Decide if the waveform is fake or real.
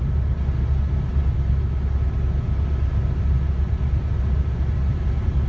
real